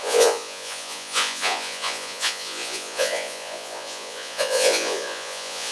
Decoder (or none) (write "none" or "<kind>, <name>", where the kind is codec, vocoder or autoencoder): vocoder, Vocos